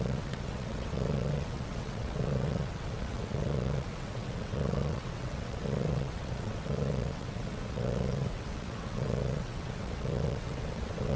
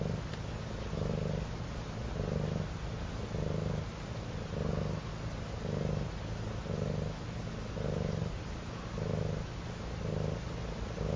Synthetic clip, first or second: first